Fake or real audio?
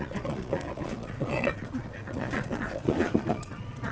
fake